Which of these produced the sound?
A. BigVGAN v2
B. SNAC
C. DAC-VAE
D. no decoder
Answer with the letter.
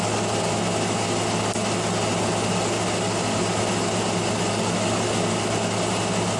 D